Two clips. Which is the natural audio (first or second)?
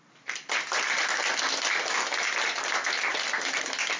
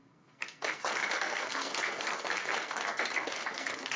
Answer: first